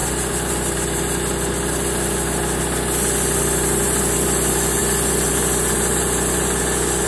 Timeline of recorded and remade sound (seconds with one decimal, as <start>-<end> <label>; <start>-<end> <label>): 0.0-7.1 recorded